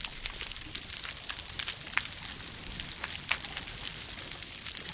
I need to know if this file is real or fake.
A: fake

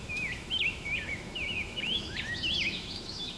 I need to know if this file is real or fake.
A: fake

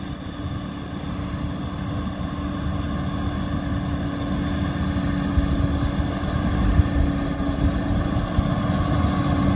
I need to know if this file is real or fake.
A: real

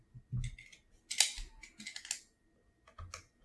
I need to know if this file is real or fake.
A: real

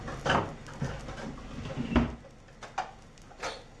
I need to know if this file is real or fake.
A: real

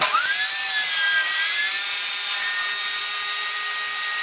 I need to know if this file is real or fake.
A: real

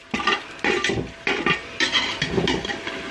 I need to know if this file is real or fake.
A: real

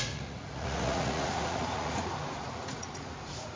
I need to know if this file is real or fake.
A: fake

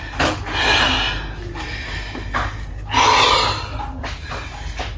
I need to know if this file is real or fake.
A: real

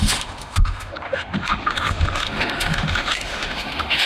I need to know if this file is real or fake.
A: fake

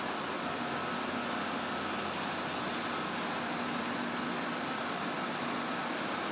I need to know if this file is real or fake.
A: real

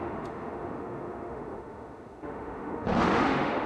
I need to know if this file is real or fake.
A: fake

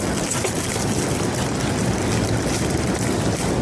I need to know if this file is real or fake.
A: real